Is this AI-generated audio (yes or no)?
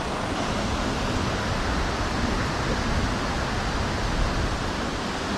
no